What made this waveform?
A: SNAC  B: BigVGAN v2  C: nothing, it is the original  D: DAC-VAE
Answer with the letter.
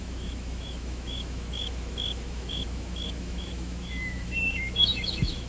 D